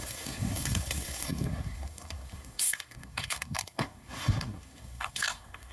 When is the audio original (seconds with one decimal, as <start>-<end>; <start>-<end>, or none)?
none